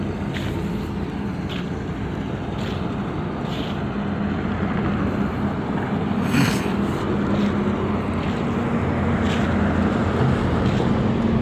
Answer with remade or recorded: recorded